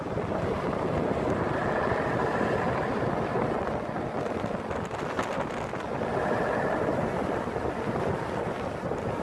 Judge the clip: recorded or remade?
recorded